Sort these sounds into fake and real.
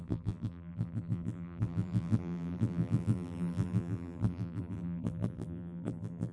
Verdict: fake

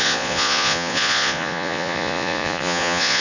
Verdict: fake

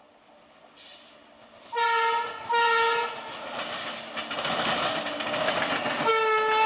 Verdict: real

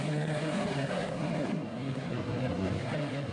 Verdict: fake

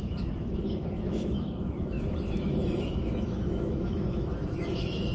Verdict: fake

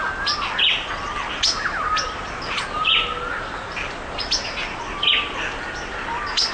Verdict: real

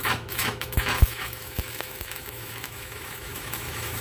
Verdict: fake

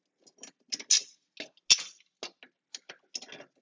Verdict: real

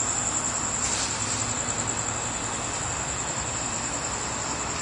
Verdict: real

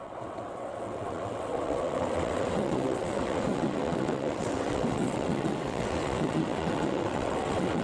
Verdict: fake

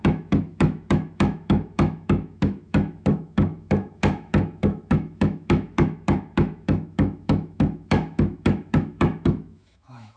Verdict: fake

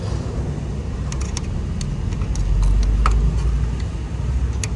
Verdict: real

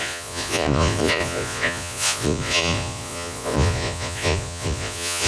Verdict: fake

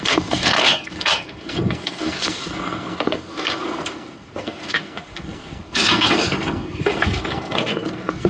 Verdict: fake